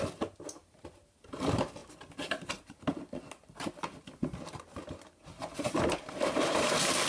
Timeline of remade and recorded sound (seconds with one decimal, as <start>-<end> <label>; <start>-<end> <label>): 0.0-7.1 recorded